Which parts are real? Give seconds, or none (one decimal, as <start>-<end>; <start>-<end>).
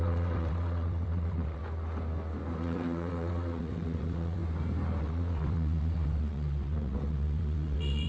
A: 1.6-2.6; 4.4-5.0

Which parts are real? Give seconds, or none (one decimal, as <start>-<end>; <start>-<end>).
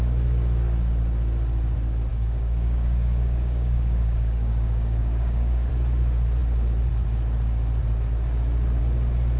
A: 0.0-2.1; 5.7-9.4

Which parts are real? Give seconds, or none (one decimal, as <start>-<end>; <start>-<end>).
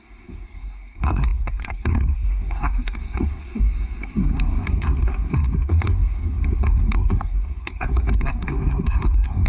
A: none